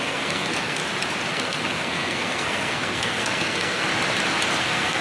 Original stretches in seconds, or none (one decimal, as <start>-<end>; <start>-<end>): 0.8-1.3; 3.9-4.6